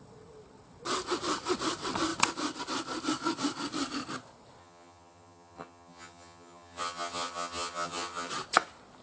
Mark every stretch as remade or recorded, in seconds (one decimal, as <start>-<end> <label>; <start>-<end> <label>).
0.0-4.6 recorded; 4.6-8.3 remade; 8.3-9.0 recorded